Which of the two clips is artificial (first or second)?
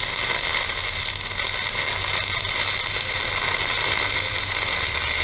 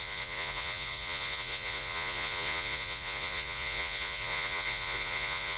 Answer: second